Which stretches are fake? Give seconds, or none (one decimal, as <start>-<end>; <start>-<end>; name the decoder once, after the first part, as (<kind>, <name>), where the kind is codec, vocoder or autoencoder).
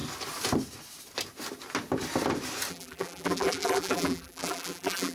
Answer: 2.7-5.1 (vocoder, BigVGAN v2)